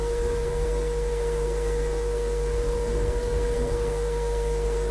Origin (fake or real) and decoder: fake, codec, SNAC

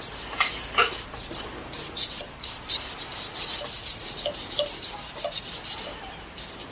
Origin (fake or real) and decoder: real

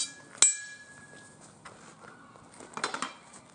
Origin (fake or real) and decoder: real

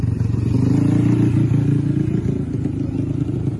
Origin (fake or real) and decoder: real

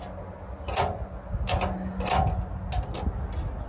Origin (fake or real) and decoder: real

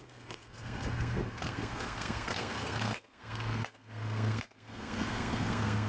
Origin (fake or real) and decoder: fake, codec, SNAC